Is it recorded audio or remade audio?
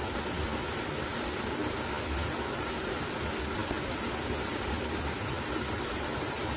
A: recorded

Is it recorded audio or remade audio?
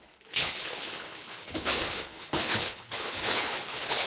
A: remade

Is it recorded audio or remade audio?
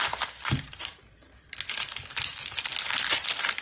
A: recorded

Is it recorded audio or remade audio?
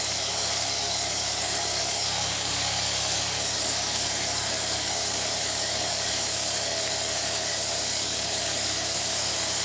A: remade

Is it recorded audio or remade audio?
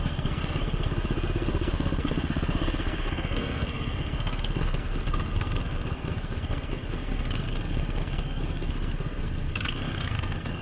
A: remade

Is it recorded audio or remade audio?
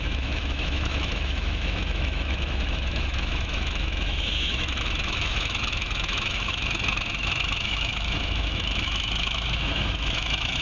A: remade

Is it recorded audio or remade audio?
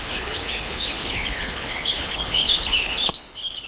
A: remade